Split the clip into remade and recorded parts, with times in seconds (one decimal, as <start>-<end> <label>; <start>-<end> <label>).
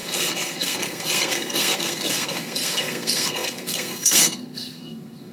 0.0-5.3 remade